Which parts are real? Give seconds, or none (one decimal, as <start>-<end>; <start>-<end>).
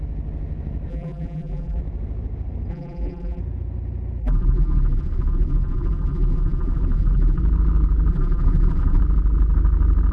0.0-0.9; 1.8-2.7; 3.4-4.2; 7.4-8.1; 9.0-10.1